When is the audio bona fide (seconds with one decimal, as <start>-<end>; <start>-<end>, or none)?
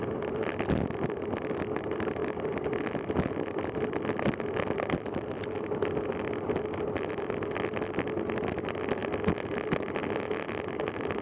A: 0.0-11.2